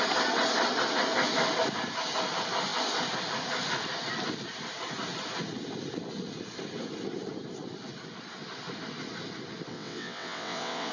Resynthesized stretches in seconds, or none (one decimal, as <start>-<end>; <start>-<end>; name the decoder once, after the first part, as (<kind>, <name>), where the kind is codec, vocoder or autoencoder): 9.7-10.9 (vocoder, WaveNeXt)